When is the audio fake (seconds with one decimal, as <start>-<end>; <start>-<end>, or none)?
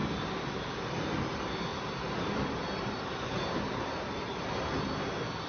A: 0.0-1.0; 1.7-4.7